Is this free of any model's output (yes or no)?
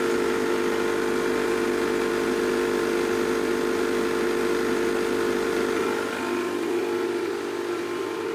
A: yes